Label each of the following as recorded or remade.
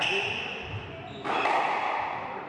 recorded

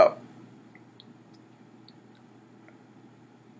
recorded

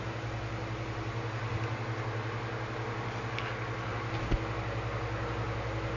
recorded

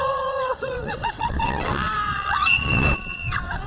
remade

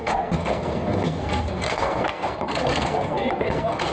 remade